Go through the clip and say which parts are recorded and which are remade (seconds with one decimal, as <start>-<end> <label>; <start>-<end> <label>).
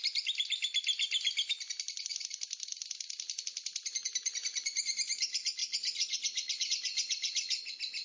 0.0-8.0 recorded